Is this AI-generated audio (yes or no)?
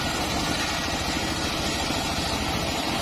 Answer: no